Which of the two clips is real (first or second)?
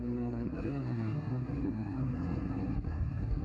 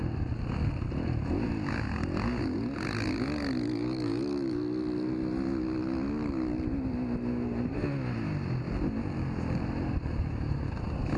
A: second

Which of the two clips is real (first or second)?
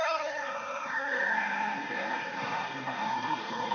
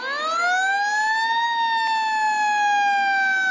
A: second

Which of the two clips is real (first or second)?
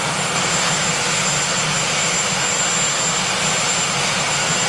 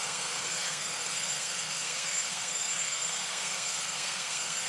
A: first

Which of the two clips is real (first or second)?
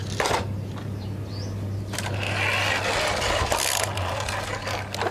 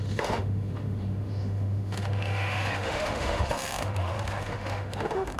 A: first